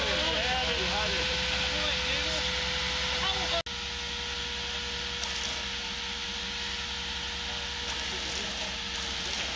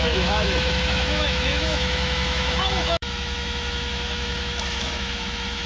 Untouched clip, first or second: first